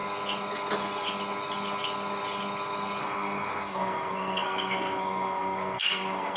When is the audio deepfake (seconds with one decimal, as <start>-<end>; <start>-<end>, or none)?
3.0-6.4